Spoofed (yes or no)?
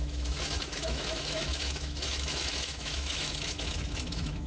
yes